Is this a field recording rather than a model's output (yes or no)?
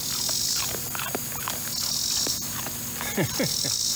yes